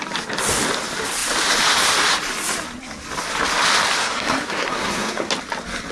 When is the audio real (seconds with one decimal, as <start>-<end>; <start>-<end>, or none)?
0.0-4.0; 5.3-5.9